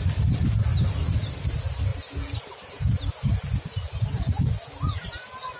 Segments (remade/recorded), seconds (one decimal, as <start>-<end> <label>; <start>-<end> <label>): 0.0-5.6 recorded